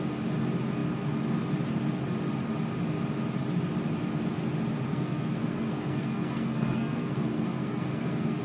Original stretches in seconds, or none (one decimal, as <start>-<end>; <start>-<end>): 0.0-4.9